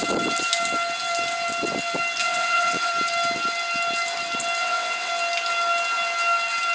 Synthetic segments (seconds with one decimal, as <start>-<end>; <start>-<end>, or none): 2.2-2.9; 4.6-5.1

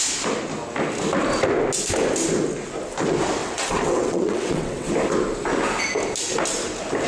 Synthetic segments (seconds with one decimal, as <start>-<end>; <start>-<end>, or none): 3.4-4.9

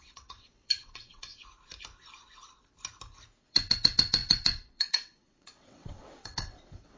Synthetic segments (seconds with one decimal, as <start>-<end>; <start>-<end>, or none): 0.0-1.3; 3.4-7.0

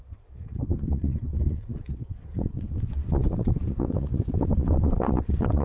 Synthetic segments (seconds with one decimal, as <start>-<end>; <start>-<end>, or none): 0.0-5.6

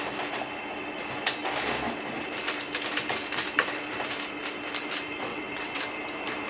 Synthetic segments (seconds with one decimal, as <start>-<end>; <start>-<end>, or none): 5.3-5.8